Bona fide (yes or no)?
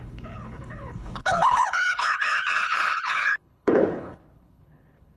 no